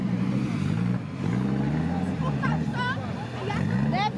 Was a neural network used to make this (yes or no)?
no